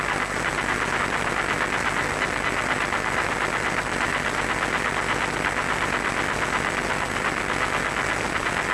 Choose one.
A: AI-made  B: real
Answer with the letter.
B